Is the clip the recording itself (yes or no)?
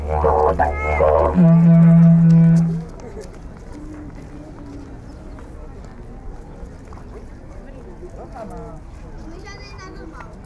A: yes